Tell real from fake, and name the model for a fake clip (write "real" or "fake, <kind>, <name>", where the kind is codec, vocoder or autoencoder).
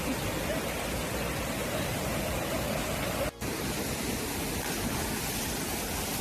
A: fake, vocoder, BigVGAN v2